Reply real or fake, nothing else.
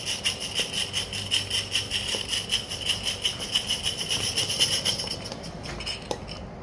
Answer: real